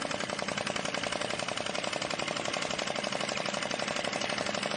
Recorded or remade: recorded